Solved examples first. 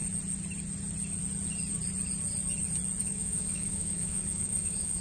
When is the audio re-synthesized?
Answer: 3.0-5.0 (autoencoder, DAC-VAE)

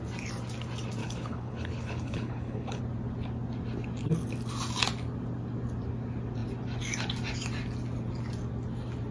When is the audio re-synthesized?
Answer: 1.0-2.8 (codec, HILCodec)

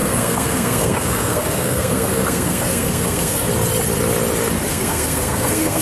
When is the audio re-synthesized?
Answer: 0.0-3.5 (codec, SNAC); 4.7-5.8

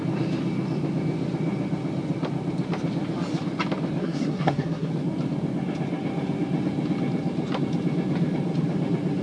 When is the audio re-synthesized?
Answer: 4.0-4.9 (codec, SNAC)

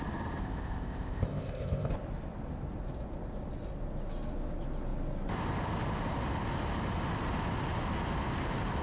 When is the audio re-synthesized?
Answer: 0.4-1.9 (codec, ZipCodec)

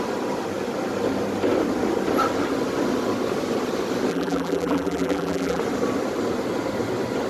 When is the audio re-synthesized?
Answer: 4.1-5.6 (vocoder, BigVGAN v2)

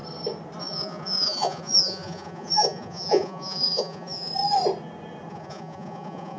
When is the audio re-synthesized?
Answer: 0.6-4.3 (vocoder, Vocos); 5.3-6.4